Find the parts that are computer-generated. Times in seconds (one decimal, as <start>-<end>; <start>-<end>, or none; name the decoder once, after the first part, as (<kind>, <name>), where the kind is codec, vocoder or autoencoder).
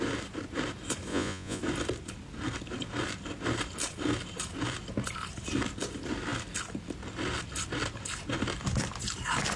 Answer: 1.1-1.6 (vocoder, Vocos)